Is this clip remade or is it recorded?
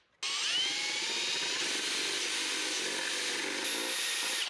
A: recorded